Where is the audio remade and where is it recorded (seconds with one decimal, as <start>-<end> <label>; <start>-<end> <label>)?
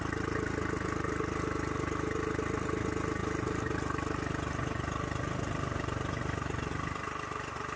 0.0-7.8 recorded